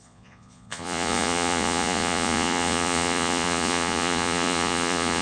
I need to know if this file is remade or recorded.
remade